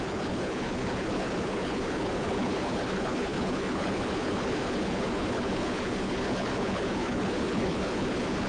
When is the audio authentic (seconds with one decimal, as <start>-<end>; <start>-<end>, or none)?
none